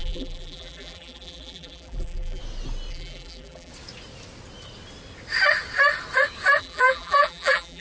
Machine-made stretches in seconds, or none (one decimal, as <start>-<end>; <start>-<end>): 0.0-2.4; 2.9-3.7; 6.6-7.8